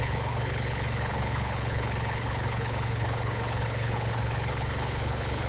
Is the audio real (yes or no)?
no